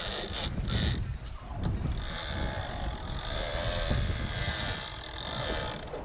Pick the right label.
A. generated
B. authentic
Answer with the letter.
B